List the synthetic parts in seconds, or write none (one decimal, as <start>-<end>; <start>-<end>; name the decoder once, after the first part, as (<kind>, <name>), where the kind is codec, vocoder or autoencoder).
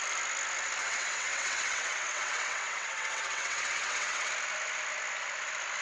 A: 0.8-4.3 (vocoder, WaveNeXt)